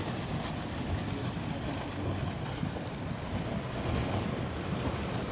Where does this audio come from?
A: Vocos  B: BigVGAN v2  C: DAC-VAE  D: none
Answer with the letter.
D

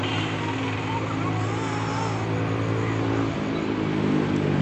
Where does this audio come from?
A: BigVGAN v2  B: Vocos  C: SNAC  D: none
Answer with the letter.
D